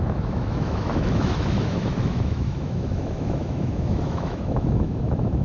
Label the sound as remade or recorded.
remade